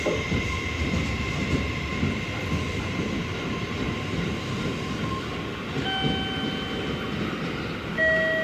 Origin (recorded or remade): recorded